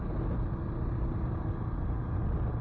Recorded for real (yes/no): yes